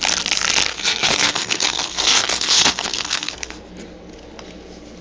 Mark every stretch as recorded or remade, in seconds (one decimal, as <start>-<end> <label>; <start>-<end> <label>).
0.0-0.7 recorded; 0.7-3.7 remade; 3.7-5.0 recorded